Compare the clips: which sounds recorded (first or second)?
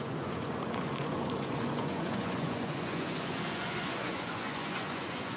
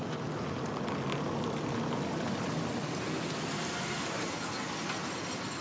second